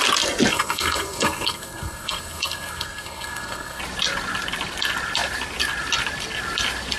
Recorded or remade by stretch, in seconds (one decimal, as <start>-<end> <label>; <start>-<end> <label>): 0.0-0.5 recorded; 0.5-3.8 remade; 3.8-7.0 recorded